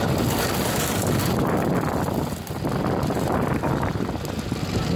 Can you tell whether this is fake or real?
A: real